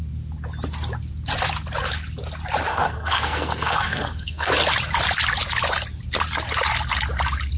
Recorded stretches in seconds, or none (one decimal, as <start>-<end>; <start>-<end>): 0.0-2.7; 4.5-7.6